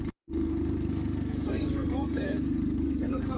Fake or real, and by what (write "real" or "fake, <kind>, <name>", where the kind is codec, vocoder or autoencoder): fake, codec, SNAC